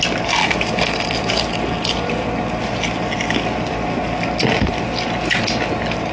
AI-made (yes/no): no